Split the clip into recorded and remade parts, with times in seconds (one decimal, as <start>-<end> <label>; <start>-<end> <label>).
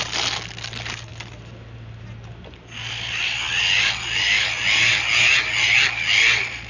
0.0-6.7 recorded